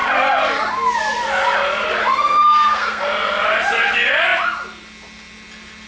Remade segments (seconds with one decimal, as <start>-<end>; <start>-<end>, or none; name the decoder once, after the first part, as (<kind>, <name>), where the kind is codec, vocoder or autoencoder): 2.0-3.0 (codec, SNAC)